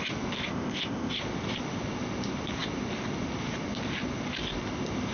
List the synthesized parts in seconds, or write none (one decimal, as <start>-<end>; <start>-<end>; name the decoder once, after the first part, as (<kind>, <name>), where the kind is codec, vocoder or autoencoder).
0.5-1.1 (codec, ZipCodec)